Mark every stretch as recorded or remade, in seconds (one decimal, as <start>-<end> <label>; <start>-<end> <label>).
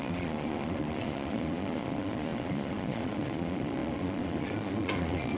0.0-5.4 remade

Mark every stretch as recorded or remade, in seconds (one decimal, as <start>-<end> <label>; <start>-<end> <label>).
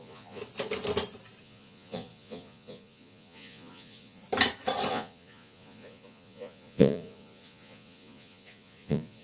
0.0-0.4 remade; 0.4-1.4 recorded; 1.4-4.2 remade; 4.2-4.9 recorded; 4.9-9.2 remade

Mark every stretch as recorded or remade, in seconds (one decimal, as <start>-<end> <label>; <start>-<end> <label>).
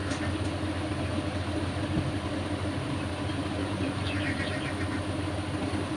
0.0-3.6 recorded; 3.6-4.2 remade; 4.2-6.0 recorded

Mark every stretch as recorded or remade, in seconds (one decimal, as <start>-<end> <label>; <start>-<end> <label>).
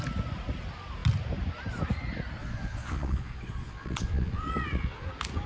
0.0-2.4 recorded; 2.4-5.1 remade; 5.1-5.5 recorded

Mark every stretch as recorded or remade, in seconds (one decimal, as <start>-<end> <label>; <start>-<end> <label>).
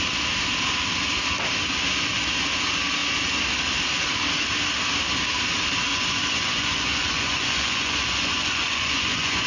0.0-5.9 recorded; 5.9-9.5 remade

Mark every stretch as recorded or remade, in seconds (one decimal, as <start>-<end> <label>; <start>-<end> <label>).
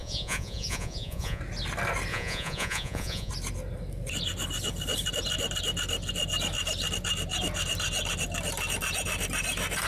0.0-1.4 remade; 1.4-2.1 recorded; 2.1-3.3 remade; 3.3-9.9 recorded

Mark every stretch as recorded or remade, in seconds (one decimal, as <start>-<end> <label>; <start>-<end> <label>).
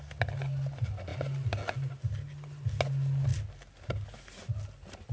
0.0-5.1 recorded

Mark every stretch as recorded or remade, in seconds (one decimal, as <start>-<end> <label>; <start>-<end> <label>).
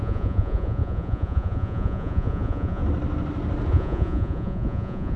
0.0-2.8 remade; 2.8-3.7 recorded; 3.7-5.2 remade